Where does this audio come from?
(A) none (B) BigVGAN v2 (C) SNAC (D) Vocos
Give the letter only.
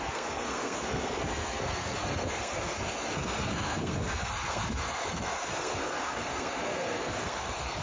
C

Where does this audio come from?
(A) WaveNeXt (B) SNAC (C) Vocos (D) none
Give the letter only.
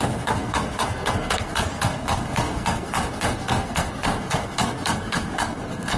B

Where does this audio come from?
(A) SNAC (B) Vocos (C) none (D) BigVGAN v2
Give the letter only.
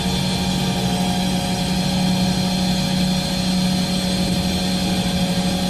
C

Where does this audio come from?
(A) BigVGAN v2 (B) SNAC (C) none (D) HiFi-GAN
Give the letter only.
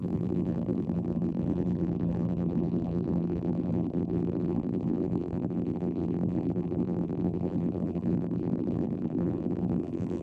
A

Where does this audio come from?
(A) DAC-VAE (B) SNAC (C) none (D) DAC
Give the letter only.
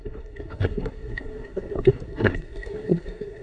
B